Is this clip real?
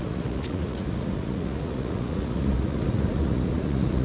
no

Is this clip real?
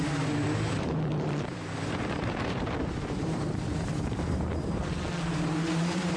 no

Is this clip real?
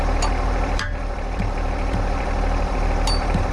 no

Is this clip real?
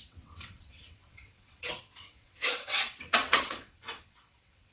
no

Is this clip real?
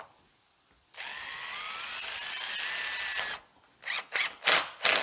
yes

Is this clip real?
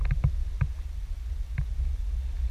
yes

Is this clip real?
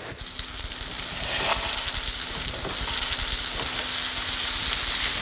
yes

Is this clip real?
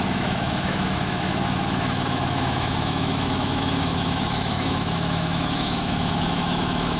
no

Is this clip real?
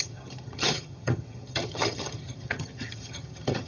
no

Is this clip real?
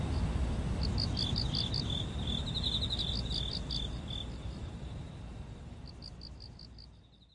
yes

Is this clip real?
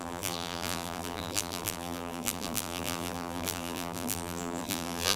no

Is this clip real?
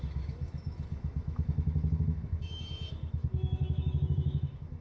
no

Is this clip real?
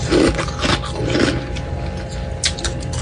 yes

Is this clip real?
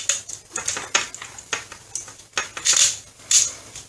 yes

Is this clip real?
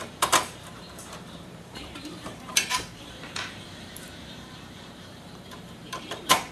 no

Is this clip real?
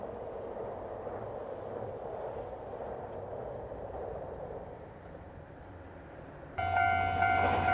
no